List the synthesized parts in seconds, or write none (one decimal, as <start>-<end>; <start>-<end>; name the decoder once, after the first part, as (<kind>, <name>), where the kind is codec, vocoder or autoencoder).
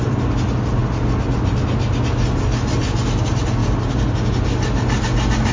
none